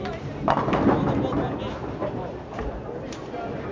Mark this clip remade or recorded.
recorded